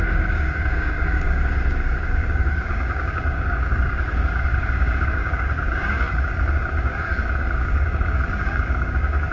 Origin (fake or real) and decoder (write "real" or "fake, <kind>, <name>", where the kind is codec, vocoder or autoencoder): fake, codec, DAC